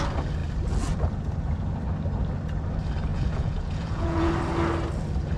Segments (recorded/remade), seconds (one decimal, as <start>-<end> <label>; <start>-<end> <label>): 0.0-3.1 recorded; 3.1-4.3 remade; 4.3-5.4 recorded

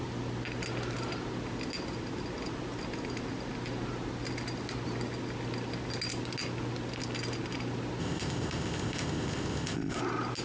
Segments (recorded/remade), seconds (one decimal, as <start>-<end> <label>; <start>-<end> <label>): 0.0-8.0 recorded; 8.0-10.0 remade; 10.0-10.4 recorded